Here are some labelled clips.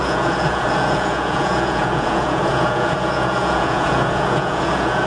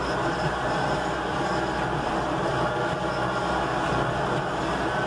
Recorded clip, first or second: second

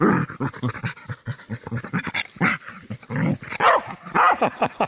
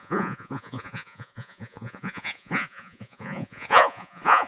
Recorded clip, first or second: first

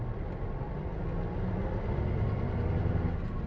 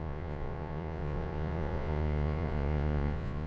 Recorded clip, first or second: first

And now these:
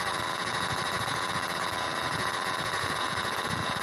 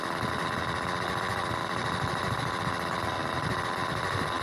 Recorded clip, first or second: second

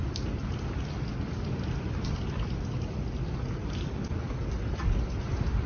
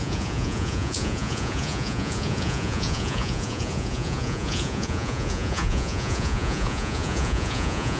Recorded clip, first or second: first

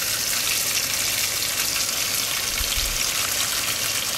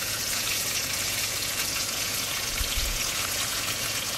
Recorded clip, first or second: first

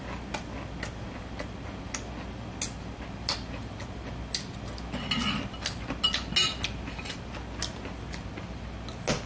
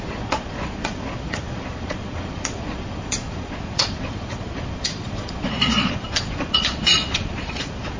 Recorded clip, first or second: first